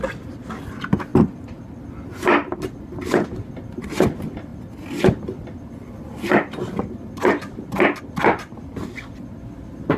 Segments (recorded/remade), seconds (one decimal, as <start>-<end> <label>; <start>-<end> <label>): 0.0-1.1 recorded; 1.1-1.8 remade; 1.8-10.0 recorded